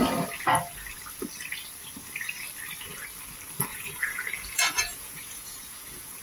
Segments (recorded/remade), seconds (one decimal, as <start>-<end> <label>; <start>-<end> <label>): 0.0-3.7 recorded; 3.7-6.2 remade